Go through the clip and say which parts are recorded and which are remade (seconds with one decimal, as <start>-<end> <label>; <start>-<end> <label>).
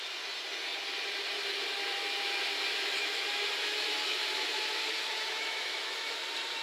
0.0-2.7 recorded; 2.7-6.1 remade; 6.1-6.6 recorded